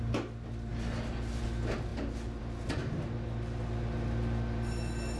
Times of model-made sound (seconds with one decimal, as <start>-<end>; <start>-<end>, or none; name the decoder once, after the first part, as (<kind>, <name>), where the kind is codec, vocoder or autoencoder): none